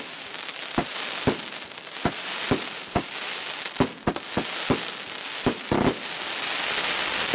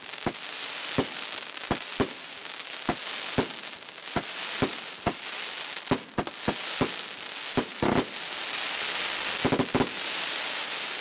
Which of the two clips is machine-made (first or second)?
first